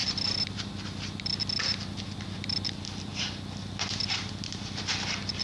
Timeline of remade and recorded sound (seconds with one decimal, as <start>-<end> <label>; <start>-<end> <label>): 0.0-5.4 recorded